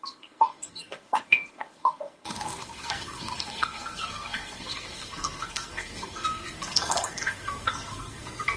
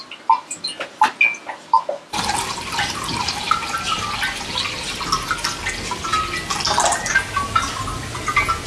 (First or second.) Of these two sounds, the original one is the second